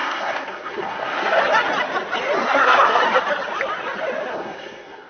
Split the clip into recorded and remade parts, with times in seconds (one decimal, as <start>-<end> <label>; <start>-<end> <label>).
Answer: 0.0-1.4 remade; 1.4-2.4 recorded; 2.4-3.0 remade; 3.0-4.3 recorded; 4.3-5.1 remade